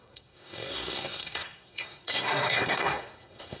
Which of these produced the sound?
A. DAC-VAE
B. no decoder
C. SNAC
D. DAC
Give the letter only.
C